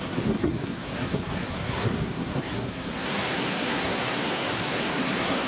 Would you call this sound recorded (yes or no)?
no